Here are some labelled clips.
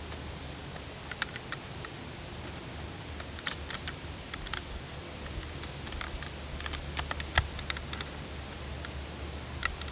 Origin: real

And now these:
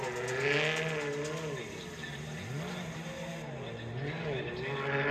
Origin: real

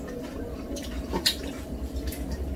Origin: real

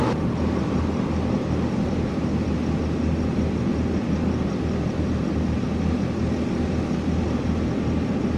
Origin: real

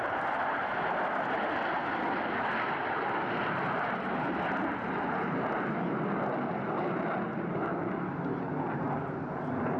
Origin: real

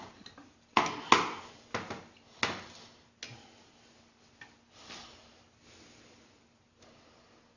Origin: real